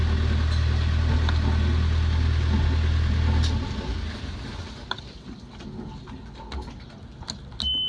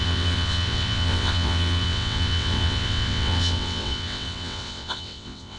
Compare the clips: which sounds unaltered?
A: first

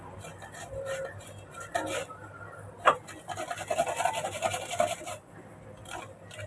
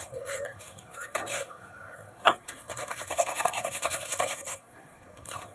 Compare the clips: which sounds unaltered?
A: first